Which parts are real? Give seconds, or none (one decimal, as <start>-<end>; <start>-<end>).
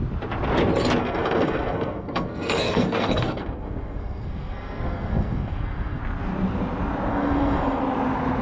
0.0-1.0; 6.0-7.1; 7.8-8.4